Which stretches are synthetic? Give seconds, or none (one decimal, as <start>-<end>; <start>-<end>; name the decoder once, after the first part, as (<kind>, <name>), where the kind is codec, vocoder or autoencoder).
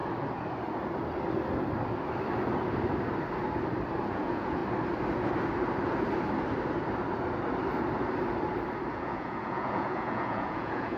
4.1-4.6 (vocoder, Vocos); 8.9-11.0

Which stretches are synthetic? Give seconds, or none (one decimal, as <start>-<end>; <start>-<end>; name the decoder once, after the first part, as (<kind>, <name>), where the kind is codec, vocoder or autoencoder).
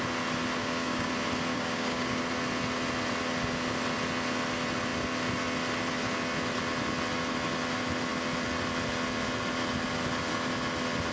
0.6-1.1 (codec, DAC); 1.5-2.2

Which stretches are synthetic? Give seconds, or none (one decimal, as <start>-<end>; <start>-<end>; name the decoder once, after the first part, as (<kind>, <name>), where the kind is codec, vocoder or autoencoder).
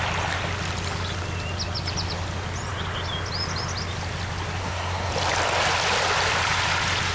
4.6-5.1 (codec, SNAC)